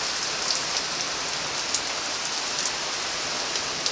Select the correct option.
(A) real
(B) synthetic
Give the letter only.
A